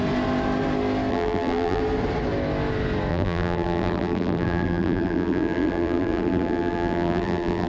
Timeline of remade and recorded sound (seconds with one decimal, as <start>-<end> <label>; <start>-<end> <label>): 0.0-1.1 recorded; 1.1-1.8 remade; 1.8-3.1 recorded; 3.1-7.7 remade